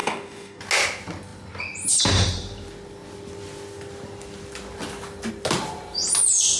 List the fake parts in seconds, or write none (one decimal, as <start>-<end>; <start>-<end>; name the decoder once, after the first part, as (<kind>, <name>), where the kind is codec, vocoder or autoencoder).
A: 0.0-0.6 (codec, DAC)